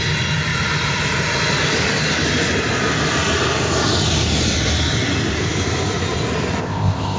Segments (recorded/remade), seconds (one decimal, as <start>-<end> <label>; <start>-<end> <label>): 0.0-6.6 recorded; 6.6-7.2 remade